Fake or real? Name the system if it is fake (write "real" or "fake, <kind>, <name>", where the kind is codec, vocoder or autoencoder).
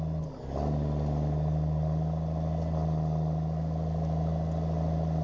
real